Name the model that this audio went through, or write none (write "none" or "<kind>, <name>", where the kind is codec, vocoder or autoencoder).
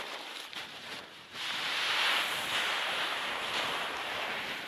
vocoder, BigVGAN v2